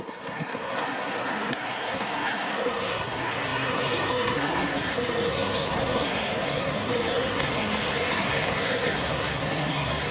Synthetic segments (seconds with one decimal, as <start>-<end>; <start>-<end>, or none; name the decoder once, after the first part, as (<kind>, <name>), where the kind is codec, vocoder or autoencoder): 0.0-10.1 (codec, SNAC)